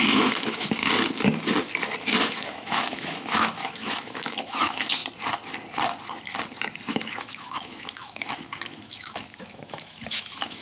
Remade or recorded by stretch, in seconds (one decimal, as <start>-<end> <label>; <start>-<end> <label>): 0.0-0.8 remade; 0.8-2.3 recorded; 2.3-5.0 remade; 5.0-6.9 recorded; 6.9-10.6 remade

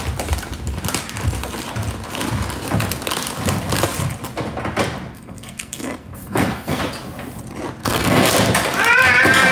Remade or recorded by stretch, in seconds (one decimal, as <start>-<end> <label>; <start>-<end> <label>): 0.0-5.1 recorded; 5.1-6.8 remade; 6.8-7.8 recorded; 7.8-8.3 remade; 8.3-9.5 recorded